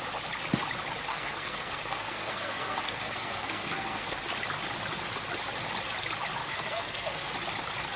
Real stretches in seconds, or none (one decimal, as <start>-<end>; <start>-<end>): 0.0-1.1; 4.2-6.4; 7.3-8.0